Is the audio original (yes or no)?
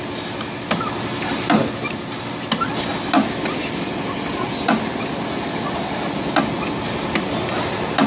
yes